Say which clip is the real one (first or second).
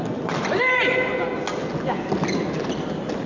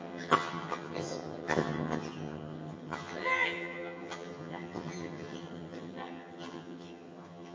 first